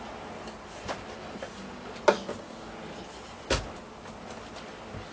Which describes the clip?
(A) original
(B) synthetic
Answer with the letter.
A